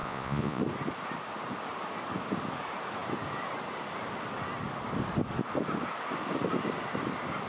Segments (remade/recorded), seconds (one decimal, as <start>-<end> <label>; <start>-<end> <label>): 0.0-0.6 remade; 0.6-7.5 recorded